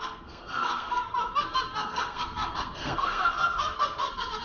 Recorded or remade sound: remade